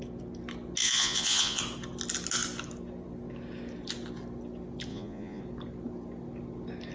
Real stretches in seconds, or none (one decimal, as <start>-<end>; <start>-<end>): 0.0-0.8; 1.6-4.9; 5.4-6.9